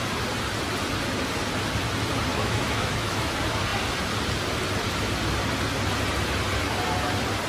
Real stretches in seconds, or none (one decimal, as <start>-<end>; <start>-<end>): 0.0-2.3; 3.3-7.5